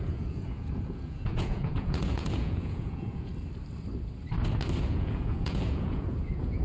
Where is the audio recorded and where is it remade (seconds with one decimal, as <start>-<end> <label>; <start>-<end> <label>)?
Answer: 0.0-3.3 remade; 3.3-4.8 recorded; 4.8-6.6 remade